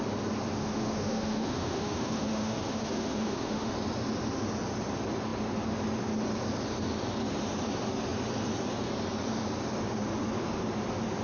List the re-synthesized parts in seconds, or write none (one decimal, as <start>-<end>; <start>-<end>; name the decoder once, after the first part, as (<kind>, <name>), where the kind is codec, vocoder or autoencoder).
0.6-3.7 (autoencoder, DAC-VAE)